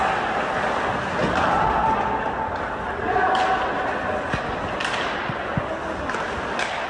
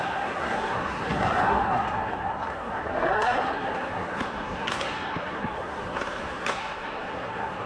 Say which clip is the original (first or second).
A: first